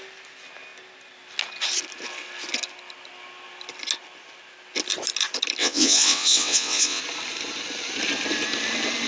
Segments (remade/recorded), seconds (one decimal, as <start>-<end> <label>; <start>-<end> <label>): 0.0-5.6 recorded; 5.6-7.0 remade; 7.0-9.1 recorded